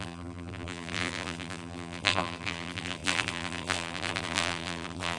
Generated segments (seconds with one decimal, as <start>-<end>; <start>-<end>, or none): 0.0-5.2